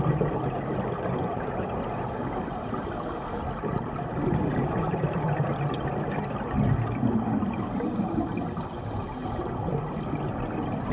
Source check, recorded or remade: recorded